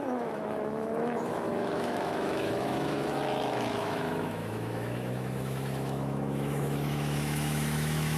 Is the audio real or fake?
fake